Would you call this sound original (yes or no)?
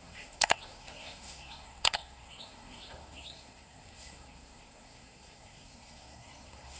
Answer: no